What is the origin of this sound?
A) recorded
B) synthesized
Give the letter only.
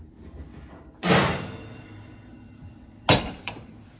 A